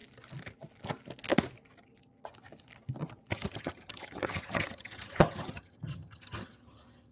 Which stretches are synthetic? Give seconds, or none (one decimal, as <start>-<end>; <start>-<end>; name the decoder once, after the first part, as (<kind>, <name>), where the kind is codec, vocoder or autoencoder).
3.3-7.1 (vocoder, HiFi-GAN)